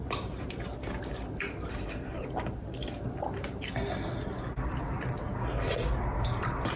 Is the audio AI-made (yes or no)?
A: no